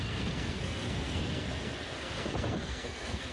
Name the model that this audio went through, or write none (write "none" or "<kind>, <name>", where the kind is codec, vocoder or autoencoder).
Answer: codec, SNAC